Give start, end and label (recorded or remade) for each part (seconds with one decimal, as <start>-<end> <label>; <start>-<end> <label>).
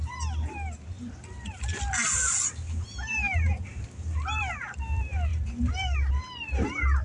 0.0-5.3 recorded; 5.3-6.1 remade; 6.1-7.0 recorded